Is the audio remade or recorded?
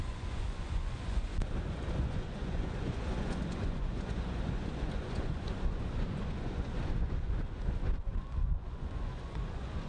remade